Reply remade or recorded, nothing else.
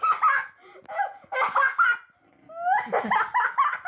recorded